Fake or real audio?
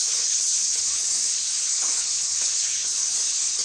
fake